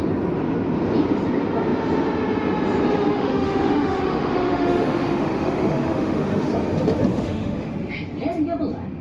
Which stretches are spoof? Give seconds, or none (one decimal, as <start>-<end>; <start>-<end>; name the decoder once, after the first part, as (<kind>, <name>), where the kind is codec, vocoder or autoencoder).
3.1-6.5 (autoencoder, DAC-VAE); 7.1-7.7